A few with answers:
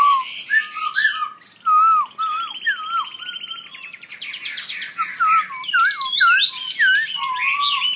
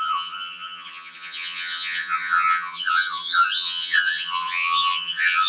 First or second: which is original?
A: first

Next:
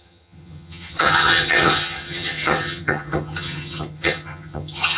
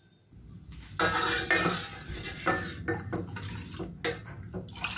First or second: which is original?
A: second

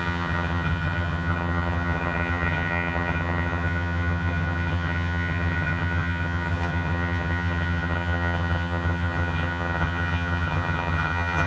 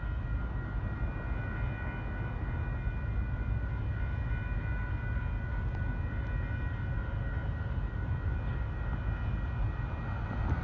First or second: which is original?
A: second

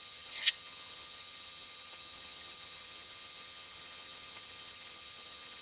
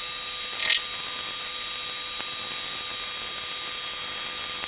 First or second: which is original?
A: second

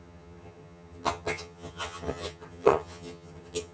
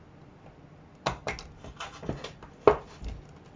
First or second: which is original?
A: second